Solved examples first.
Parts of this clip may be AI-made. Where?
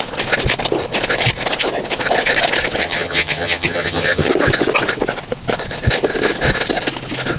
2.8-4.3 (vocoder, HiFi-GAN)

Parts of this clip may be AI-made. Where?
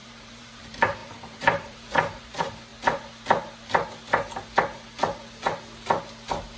0.0-2.7 (vocoder, BigVGAN v2)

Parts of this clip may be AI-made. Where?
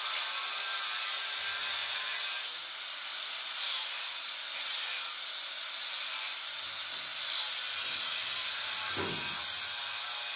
1.8-3.9 (vocoder, BigVGAN v2); 7.1-8.9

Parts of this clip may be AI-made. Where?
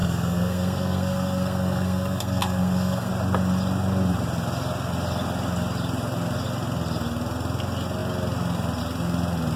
0.0-3.1 (codec, SNAC)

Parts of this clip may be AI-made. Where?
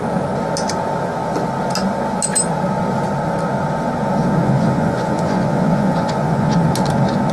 4.4-6.6 (vocoder, Vocos)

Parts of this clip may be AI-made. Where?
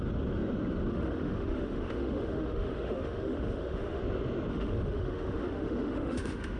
0.9-4.0 (autoencoder, DAC-VAE); 4.5-6.6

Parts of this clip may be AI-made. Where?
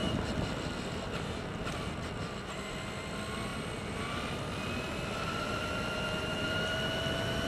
none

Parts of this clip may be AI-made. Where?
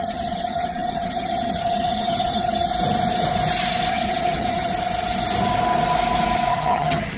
0.0-2.7 (vocoder, HiFi-GAN); 3.9-4.7; 6.5-7.2